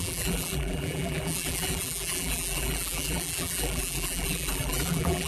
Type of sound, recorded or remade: remade